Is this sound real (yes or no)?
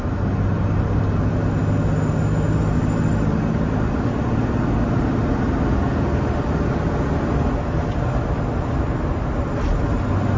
yes